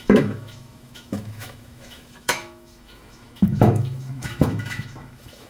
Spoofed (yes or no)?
yes